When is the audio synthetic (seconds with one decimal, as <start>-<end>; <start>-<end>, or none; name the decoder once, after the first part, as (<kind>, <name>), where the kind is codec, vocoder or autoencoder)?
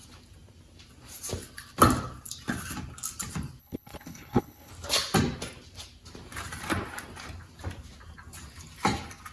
3.6-4.7 (codec, HILCodec)